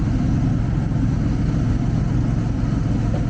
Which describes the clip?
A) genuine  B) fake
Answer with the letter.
A